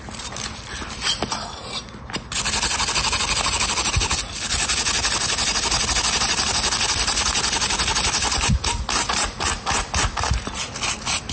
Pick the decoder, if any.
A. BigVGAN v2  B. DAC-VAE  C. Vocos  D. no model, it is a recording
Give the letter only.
D